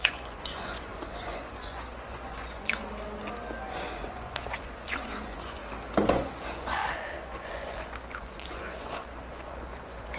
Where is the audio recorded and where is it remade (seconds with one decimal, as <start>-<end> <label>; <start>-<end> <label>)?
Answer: 0.0-2.8 remade; 2.8-3.7 recorded; 3.7-5.6 remade; 5.6-6.1 recorded; 6.1-10.2 remade